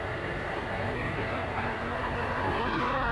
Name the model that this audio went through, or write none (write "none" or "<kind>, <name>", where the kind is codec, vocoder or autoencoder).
codec, SNAC